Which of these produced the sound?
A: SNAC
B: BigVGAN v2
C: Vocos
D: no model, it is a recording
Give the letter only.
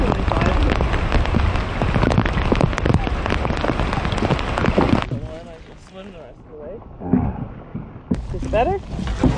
D